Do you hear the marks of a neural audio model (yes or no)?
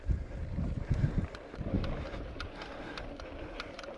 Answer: yes